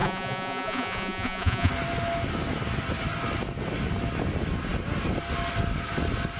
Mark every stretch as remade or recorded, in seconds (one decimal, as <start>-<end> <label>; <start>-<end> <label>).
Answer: 0.0-1.7 remade; 1.7-6.4 recorded